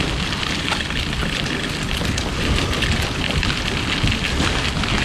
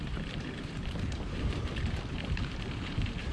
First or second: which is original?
first